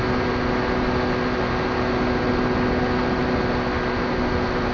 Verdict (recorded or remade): recorded